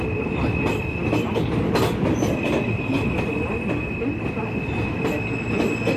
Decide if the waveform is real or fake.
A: real